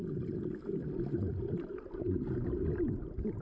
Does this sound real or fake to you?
real